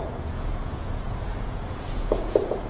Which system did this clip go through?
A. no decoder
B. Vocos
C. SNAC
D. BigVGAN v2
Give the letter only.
B